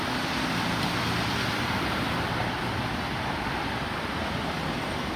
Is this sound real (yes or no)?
no